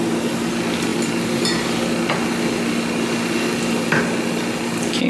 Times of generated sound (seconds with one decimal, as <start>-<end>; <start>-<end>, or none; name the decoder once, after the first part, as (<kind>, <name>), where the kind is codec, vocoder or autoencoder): none